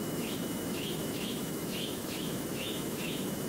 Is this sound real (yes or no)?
no